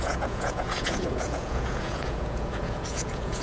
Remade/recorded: remade